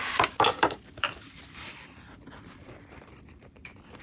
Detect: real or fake fake